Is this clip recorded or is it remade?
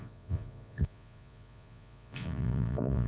remade